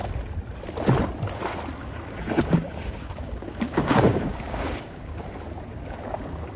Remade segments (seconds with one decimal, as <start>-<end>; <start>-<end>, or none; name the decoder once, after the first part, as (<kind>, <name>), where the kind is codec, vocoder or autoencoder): 1.8-5.1 (codec, DAC); 6.0-6.6